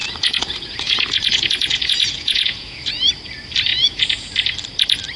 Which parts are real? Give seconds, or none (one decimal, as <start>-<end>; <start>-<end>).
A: 3.1-3.7; 4.3-5.2